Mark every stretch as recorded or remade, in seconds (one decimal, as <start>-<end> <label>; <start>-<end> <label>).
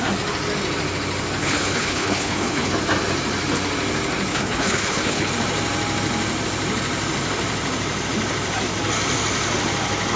0.0-1.4 recorded; 1.4-2.7 remade; 2.7-4.3 recorded; 4.3-5.3 remade; 5.3-10.2 recorded